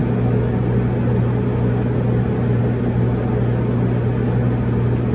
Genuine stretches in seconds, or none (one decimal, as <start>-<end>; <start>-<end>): 0.0-5.1